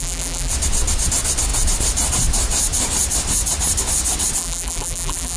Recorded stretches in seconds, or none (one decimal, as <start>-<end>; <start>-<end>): 0.5-4.4